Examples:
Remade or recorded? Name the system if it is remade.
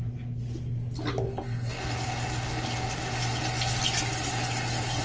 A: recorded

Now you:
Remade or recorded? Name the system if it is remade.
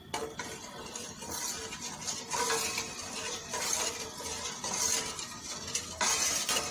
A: recorded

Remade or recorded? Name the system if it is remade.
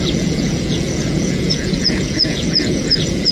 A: remade, vocoder, Vocos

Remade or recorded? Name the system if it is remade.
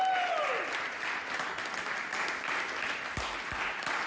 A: recorded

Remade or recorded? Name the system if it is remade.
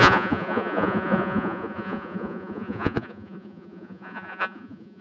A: remade, vocoder, Vocos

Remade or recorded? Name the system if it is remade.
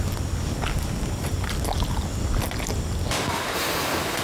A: recorded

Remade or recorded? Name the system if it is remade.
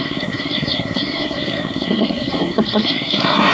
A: remade, codec, SNAC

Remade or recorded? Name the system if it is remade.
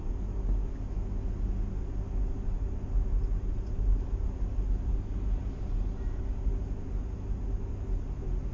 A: recorded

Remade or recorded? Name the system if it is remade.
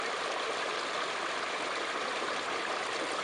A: recorded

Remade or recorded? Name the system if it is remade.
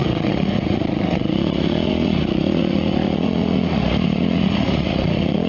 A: remade, vocoder, Vocos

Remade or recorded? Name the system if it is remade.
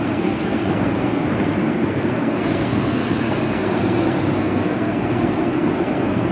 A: remade, codec, SNAC